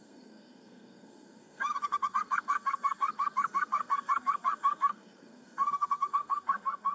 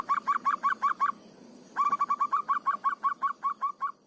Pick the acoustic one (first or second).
second